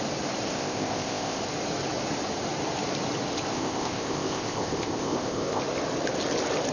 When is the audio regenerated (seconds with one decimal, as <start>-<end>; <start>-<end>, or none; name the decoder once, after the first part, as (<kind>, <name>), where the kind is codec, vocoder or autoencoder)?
0.5-1.4 (codec, ZipCodec); 3.5-5.6